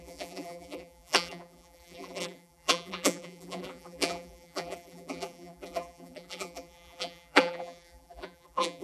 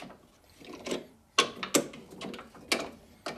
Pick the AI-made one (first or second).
first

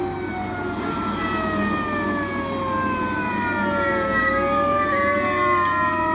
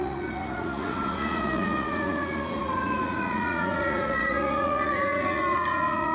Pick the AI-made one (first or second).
second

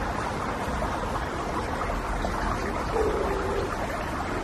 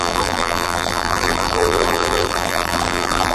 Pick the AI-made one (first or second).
second